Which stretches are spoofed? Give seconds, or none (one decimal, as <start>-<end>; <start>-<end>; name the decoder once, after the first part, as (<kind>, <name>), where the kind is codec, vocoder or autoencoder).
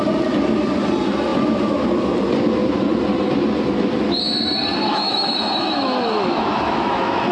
4.8-7.3 (autoencoder, DAC-VAE)